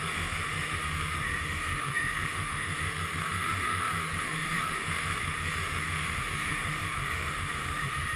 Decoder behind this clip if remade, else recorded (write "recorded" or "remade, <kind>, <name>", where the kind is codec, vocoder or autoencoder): remade, autoencoder, DAC-VAE